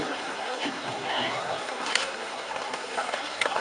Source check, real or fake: fake